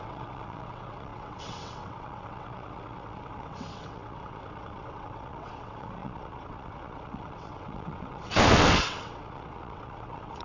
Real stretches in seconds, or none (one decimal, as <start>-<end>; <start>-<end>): none